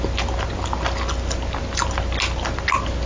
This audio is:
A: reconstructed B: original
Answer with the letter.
B